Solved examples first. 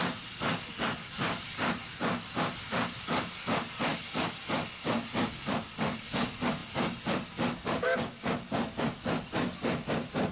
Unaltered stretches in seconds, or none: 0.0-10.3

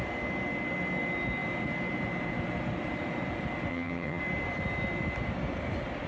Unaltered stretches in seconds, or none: 0.0-3.7; 4.2-6.1

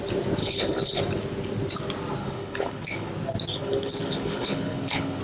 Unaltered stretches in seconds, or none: 0.0-0.4; 1.0-2.2; 3.1-3.5

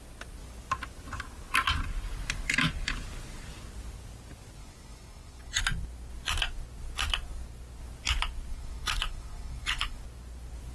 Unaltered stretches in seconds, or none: 0.0-4.6; 5.6-8.5; 10.0-10.7

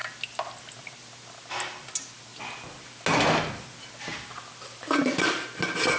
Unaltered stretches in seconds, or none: 0.0-6.0

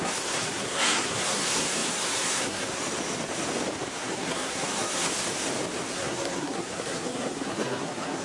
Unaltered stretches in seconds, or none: 2.8-4.0; 5.1-5.9

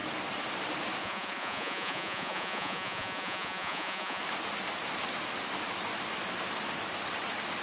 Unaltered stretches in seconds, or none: 0.0-1.0; 4.2-7.6

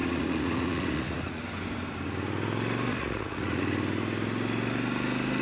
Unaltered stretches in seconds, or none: 1.4-2.9; 3.6-5.4